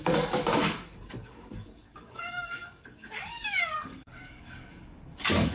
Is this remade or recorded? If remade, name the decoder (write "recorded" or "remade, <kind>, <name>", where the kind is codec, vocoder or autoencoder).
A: remade, codec, DAC